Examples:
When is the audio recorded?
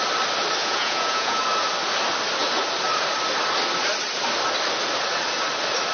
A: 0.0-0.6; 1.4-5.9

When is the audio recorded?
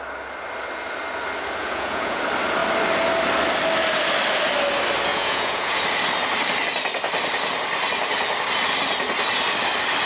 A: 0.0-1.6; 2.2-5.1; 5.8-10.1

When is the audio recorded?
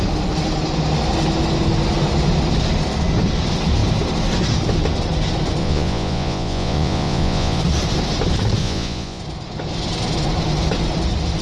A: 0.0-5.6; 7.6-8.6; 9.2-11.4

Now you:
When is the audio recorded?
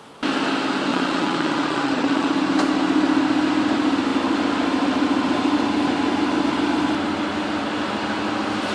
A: 0.0-0.9; 2.3-8.7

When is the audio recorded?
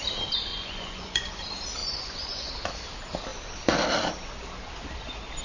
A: 0.0-0.5; 1.4-1.8; 2.5-5.4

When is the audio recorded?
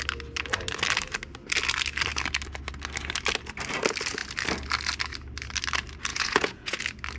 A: 0.0-6.1; 6.8-7.2